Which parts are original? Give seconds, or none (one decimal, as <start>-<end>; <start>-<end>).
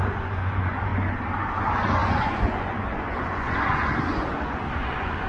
0.9-1.6